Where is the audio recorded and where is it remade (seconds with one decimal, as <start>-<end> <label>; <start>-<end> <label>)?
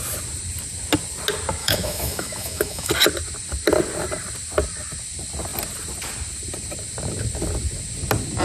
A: 0.0-1.6 recorded; 1.6-2.9 remade; 2.9-8.4 recorded